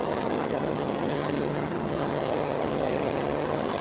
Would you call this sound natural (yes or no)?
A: no